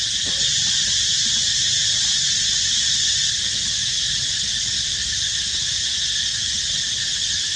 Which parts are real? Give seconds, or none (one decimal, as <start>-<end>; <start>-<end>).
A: 0.0-7.6